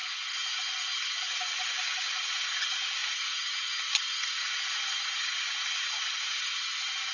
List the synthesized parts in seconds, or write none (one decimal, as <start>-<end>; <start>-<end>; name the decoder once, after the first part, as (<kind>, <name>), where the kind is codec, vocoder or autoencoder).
none